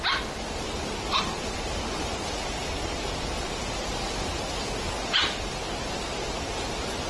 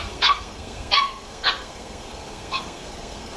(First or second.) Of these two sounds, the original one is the first